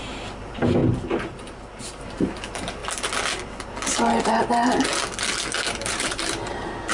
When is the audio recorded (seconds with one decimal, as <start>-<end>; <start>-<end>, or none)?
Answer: 0.8-2.0; 2.8-5.7